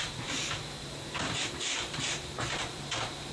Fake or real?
fake